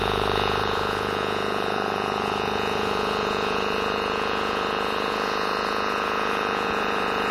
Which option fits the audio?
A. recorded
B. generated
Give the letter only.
B